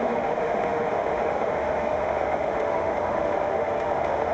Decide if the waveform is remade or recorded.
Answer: remade